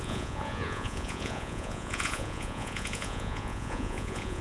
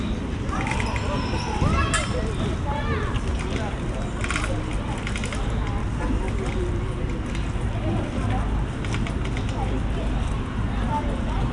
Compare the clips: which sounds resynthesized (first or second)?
first